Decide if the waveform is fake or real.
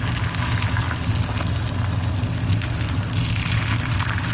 real